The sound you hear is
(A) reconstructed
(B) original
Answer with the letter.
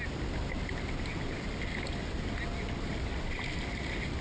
B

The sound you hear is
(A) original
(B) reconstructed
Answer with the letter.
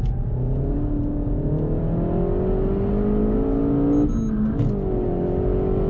A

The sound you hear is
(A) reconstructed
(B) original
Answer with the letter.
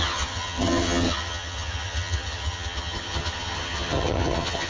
A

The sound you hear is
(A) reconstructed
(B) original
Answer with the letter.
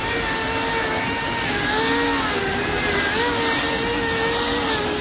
B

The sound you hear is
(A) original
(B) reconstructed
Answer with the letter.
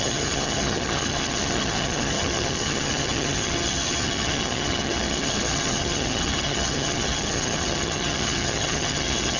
B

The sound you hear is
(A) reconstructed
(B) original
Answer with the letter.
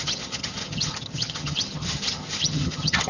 A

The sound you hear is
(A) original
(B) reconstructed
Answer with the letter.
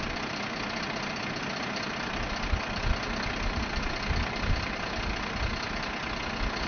A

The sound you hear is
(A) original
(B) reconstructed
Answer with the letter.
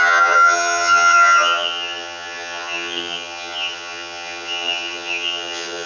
B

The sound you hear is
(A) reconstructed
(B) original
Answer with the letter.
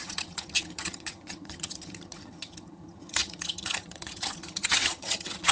A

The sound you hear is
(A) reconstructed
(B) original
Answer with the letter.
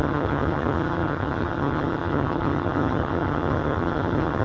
A